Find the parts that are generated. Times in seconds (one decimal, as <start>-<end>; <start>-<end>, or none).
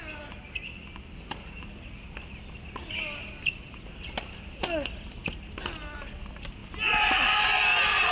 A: none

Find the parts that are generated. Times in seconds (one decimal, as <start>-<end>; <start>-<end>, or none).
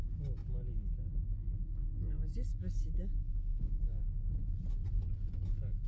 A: 2.5-4.0